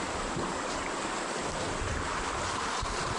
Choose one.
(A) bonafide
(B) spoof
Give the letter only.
A